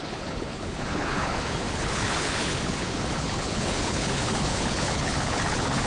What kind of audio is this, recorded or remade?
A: remade